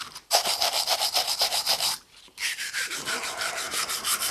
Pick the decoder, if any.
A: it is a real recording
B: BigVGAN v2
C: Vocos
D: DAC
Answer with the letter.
B